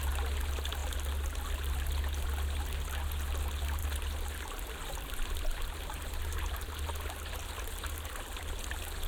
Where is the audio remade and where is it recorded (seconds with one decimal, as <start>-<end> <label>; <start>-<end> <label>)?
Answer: 0.0-9.1 recorded